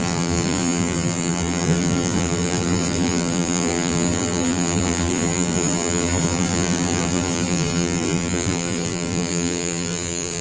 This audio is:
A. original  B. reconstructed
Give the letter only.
B